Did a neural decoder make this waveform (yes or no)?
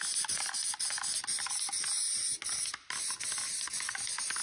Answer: no